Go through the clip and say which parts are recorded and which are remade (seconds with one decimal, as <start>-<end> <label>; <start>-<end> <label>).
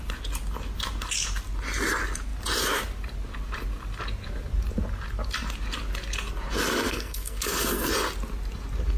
0.0-6.8 recorded; 6.8-7.9 remade; 7.9-9.0 recorded